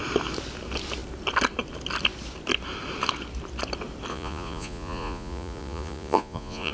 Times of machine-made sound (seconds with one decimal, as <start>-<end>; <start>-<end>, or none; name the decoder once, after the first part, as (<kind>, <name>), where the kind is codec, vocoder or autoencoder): 4.1-6.7 (vocoder, Vocos)